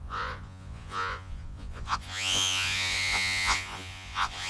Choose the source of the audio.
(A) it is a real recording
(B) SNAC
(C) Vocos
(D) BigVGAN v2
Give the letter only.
C